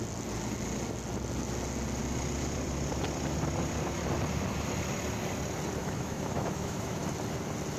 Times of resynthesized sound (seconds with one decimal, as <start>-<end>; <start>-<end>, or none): 5.8-7.0